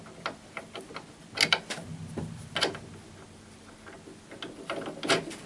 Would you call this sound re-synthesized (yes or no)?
no